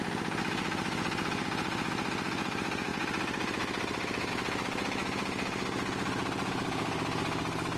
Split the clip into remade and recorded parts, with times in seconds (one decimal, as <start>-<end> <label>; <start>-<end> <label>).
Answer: 0.0-7.8 recorded